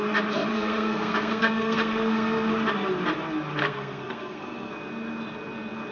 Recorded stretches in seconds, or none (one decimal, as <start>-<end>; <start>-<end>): 0.0-0.5; 2.5-3.6; 4.7-5.9